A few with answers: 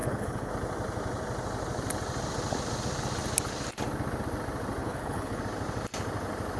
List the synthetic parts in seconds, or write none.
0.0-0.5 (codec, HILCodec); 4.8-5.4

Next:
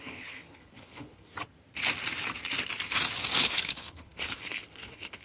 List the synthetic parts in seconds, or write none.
0.0-1.3 (codec, HILCodec); 3.4-5.2

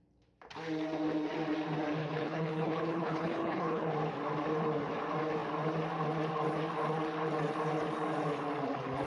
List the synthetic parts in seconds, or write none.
2.0-3.9 (codec, HILCodec)

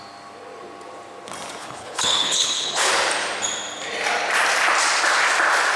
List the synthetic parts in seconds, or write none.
1.6-2.9 (codec, HILCodec)